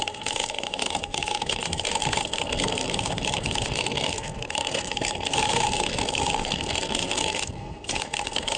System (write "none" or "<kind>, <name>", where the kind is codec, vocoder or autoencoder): codec, SNAC